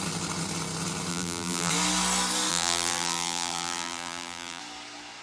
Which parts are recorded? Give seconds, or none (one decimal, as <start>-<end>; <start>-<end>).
0.0-1.1; 1.7-2.5; 4.6-5.2